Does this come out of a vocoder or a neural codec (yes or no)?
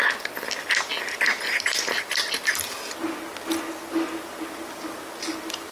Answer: no